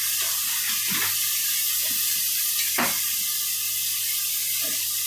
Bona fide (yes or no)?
yes